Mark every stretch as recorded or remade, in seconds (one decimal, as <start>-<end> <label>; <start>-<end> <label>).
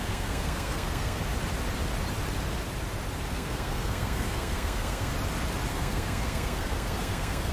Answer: 0.0-1.2 remade; 1.2-3.3 recorded; 3.3-5.1 remade; 5.1-5.7 recorded; 5.7-7.5 remade